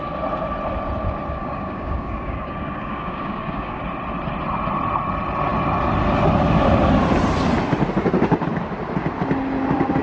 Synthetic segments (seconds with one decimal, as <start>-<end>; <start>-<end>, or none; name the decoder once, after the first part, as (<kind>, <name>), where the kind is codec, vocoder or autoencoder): 1.4-3.8 (codec, DAC)